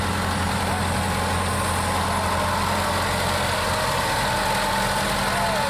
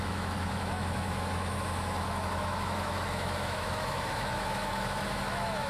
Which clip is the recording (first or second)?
first